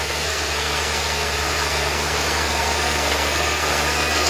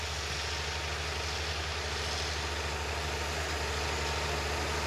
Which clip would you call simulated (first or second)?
first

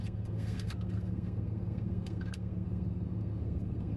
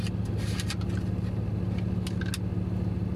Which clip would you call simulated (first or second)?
first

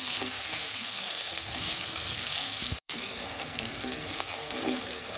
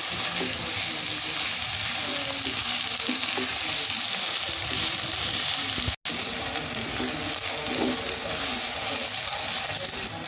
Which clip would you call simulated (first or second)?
first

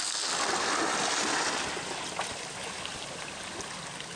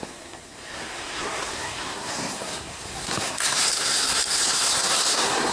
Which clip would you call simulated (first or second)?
second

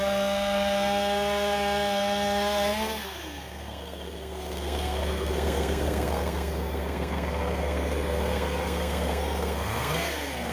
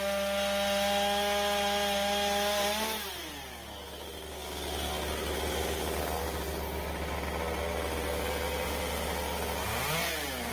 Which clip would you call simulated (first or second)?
first